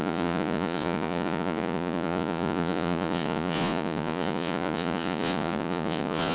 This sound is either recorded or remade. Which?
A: remade